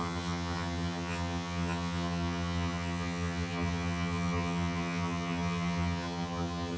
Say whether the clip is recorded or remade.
remade